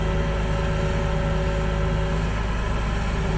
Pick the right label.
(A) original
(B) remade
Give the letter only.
A